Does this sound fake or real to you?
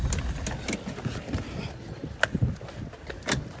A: real